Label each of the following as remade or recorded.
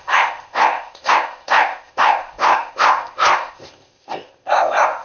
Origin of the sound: remade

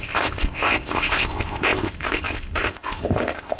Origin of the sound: remade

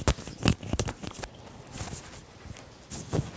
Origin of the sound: recorded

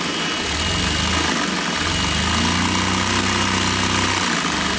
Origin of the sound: recorded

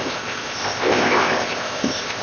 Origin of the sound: remade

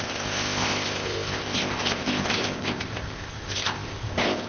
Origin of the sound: remade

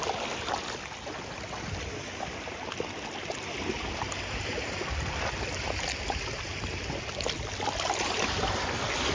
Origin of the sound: recorded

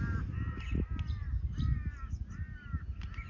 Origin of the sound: recorded